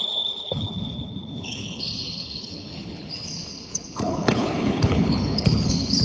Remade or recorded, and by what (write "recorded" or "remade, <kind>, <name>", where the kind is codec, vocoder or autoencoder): remade, codec, HILCodec